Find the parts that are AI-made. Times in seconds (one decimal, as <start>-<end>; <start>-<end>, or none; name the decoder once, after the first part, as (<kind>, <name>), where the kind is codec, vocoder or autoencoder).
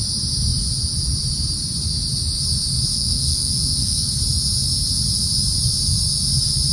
2.9-4.1 (codec, SNAC)